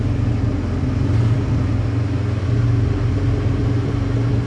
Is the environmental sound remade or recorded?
recorded